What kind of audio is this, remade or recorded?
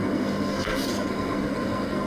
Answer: remade